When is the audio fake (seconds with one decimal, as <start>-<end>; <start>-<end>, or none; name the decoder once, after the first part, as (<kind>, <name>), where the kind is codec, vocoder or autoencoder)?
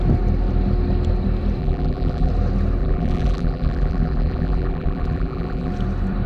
1.6-2.3 (vocoder, BigVGAN v2); 2.8-5.7